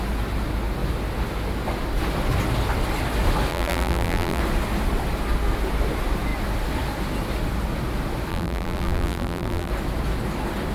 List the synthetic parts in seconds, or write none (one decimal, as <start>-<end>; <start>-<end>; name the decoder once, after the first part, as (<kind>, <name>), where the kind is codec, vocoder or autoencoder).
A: 3.5-4.4 (vocoder, BigVGAN v2); 8.3-9.7